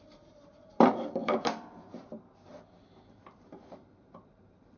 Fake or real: fake